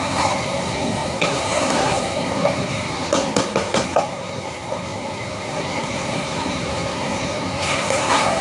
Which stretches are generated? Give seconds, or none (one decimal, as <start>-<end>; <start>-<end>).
0.0-8.4